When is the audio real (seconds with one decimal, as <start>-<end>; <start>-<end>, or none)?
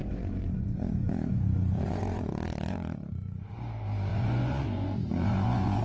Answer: 3.5-4.1